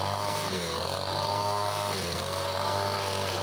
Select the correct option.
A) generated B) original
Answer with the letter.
A